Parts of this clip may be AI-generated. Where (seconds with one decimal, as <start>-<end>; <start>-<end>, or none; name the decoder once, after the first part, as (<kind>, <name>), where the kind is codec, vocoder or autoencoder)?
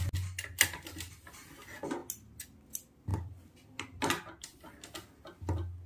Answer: none